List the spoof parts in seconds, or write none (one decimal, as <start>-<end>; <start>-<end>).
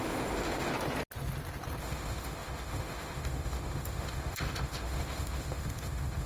0.0-0.7; 1.8-6.3